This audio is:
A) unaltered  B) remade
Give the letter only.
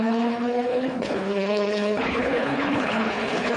B